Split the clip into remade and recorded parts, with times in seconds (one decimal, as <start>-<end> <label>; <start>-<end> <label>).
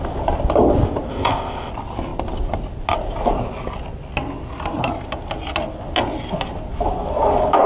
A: 0.0-1.1 recorded; 1.1-1.7 remade; 1.7-7.7 recorded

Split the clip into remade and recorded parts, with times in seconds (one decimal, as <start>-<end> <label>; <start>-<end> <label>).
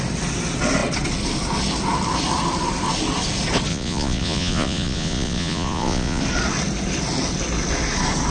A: 0.0-3.7 recorded; 3.7-6.2 remade; 6.2-8.3 recorded